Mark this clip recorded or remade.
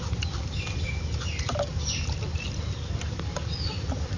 recorded